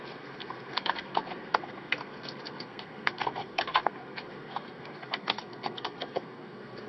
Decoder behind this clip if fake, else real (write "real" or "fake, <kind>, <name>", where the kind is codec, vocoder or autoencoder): fake, codec, SNAC